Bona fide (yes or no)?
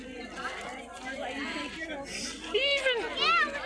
yes